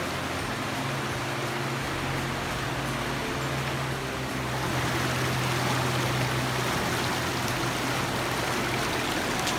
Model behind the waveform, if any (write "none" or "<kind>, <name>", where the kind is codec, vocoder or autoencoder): none